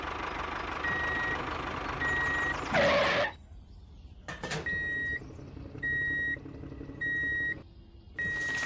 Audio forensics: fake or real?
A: real